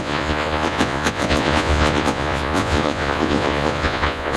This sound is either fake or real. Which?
fake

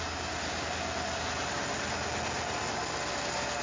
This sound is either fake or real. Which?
real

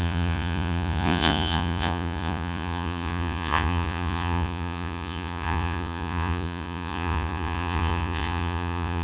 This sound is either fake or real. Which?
fake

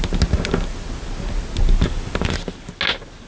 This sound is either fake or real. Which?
real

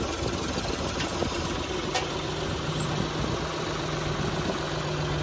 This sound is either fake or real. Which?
real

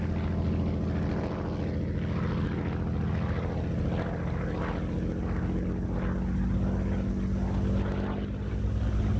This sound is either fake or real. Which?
real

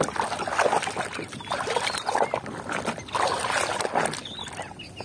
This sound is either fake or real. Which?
real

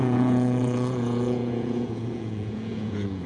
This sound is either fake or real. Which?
fake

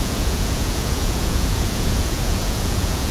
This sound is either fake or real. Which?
fake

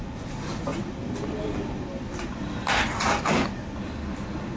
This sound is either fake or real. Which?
real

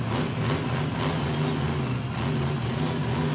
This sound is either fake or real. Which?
real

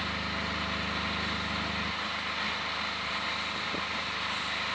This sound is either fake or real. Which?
real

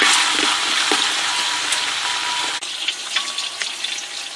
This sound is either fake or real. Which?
real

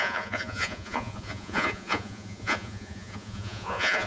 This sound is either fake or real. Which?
fake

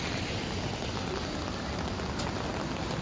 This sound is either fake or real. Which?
real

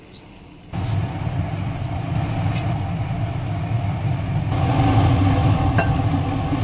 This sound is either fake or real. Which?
real